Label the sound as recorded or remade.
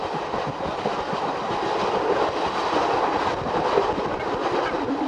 recorded